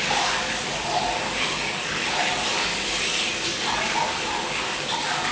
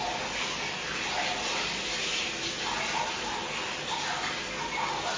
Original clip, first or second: second